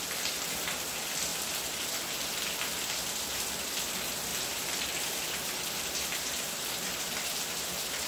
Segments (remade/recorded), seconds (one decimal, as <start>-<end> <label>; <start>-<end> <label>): 0.0-1.3 remade; 1.3-2.6 recorded; 2.6-8.1 remade